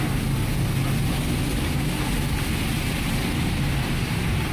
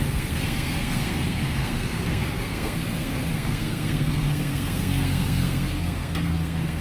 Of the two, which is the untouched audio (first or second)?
first